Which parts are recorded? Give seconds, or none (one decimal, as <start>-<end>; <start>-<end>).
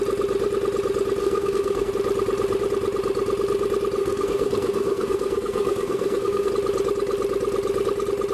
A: 0.0-1.2; 1.9-4.0; 6.5-8.3